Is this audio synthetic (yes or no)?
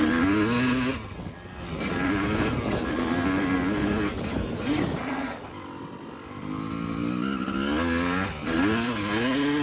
no